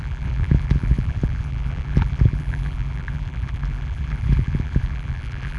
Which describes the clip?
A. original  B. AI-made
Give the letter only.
B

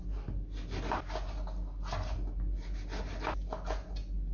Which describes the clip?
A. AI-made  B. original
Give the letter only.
B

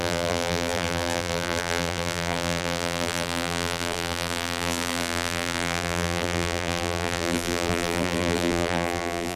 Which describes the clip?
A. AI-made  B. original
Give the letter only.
A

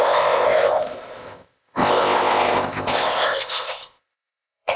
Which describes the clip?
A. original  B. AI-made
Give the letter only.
B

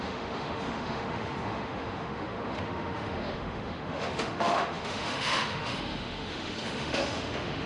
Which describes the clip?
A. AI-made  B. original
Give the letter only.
A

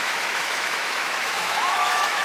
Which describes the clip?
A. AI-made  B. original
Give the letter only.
A